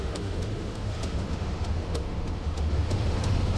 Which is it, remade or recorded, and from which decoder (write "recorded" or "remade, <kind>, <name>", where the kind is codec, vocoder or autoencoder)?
remade, autoencoder, DAC-VAE